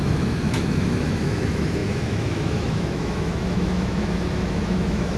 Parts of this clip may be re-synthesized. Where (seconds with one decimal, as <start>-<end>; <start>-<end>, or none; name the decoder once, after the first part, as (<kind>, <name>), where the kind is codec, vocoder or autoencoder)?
0.0-5.2 (autoencoder, DAC-VAE)